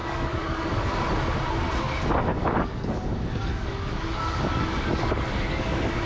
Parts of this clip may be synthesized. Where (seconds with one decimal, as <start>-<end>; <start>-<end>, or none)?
0.0-0.8; 2.3-6.1